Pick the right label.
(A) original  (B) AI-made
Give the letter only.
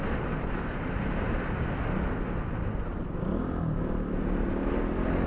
A